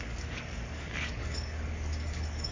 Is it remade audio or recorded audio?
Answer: remade